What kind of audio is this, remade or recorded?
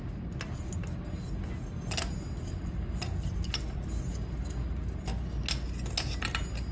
recorded